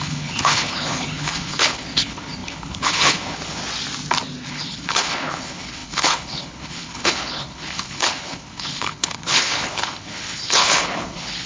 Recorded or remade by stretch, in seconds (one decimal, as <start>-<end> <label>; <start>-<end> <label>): 0.0-3.6 remade; 3.6-4.5 recorded; 4.5-11.5 remade

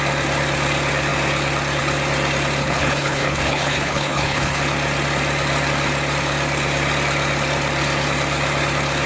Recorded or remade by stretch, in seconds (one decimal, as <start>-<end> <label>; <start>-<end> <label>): 0.0-2.6 recorded; 2.6-4.6 remade; 4.6-9.1 recorded

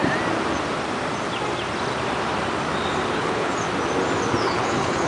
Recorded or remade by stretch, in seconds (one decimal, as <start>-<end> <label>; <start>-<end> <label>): 0.0-3.1 recorded; 3.1-3.5 remade; 3.5-4.4 recorded; 4.4-5.1 remade

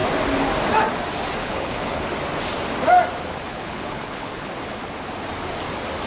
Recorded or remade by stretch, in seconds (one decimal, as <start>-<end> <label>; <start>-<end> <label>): 0.0-1.4 recorded; 1.4-2.1 remade; 2.1-3.5 recorded; 3.5-4.5 remade; 4.5-6.1 recorded

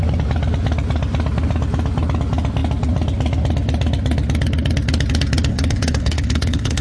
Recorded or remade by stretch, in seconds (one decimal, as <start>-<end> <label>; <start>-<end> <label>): 0.0-5.5 recorded; 5.5-6.8 remade